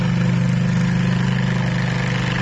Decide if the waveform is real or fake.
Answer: real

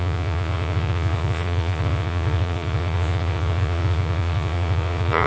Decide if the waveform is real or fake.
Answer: fake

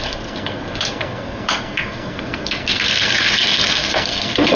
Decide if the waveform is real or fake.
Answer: fake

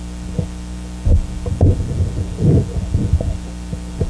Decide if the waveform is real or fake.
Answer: real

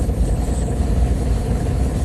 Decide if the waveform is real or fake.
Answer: fake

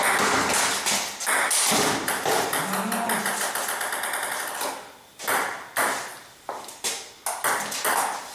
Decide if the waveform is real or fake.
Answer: real